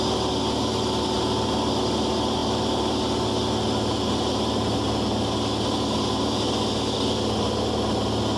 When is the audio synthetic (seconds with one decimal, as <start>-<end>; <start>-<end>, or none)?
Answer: none